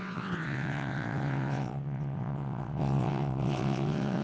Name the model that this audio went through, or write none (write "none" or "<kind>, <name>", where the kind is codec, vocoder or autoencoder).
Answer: vocoder, WaveNeXt